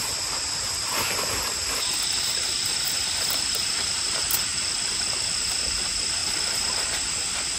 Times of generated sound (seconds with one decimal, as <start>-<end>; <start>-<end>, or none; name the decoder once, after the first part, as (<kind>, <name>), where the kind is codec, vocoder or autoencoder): 6.2-6.7 (vocoder, BigVGAN v2)